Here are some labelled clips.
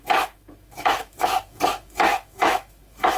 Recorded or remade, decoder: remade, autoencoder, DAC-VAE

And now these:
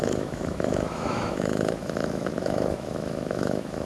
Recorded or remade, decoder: remade, autoencoder, DAC-VAE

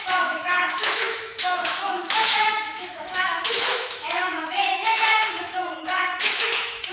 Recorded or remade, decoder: remade, autoencoder, DAC-VAE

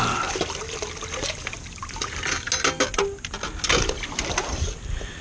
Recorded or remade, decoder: recorded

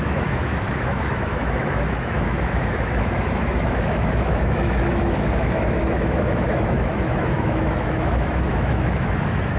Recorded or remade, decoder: remade, autoencoder, DAC-VAE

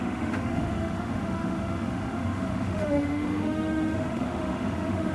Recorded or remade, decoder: remade, autoencoder, DAC-VAE